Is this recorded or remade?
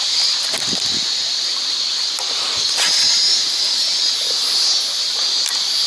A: recorded